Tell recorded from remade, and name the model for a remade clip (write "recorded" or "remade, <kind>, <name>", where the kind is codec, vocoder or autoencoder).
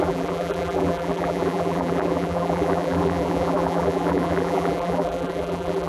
remade, vocoder, BigVGAN v2